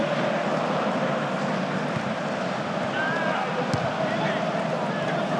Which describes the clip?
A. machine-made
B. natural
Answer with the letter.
B